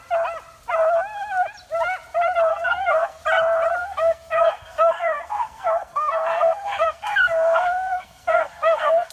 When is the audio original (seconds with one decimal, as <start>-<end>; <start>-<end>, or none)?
0.0-2.5; 3.2-3.8